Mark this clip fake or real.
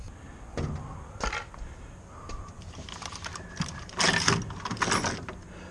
real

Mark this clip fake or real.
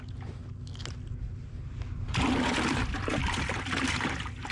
real